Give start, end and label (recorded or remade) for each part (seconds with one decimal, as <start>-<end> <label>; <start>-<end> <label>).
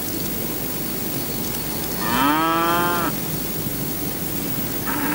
0.0-5.1 recorded